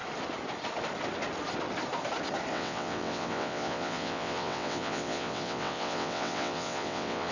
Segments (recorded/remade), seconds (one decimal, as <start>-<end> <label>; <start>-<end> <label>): 0.0-2.5 recorded; 2.5-7.3 remade